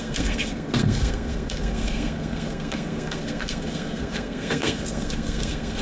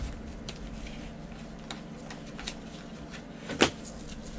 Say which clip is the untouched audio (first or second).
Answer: second